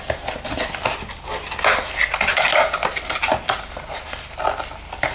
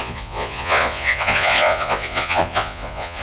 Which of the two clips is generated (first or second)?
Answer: second